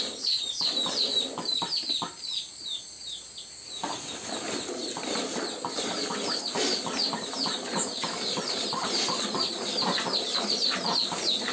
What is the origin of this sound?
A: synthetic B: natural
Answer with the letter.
B